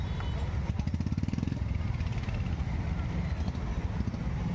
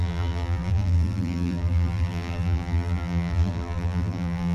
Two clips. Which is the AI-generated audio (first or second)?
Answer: second